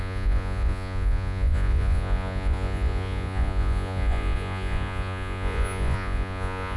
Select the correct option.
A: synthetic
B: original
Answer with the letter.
A